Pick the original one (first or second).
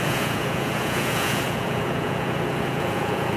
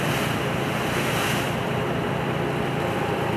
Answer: second